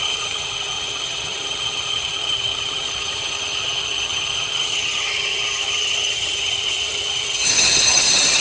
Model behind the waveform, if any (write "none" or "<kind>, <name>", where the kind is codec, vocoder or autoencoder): vocoder, HiFi-GAN